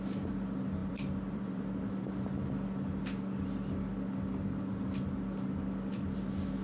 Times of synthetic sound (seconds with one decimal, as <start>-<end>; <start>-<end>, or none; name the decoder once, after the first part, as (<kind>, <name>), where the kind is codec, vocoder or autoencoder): 0.8-1.9 (vocoder, BigVGAN v2)